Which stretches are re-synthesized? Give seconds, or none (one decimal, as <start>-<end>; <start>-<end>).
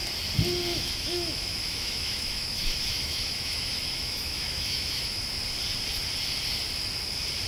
0.7-5.2